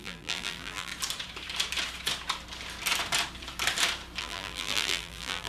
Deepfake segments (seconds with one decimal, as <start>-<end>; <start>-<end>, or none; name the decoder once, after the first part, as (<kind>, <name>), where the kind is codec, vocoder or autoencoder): 0.0-0.9 (vocoder, BigVGAN v2); 4.2-5.5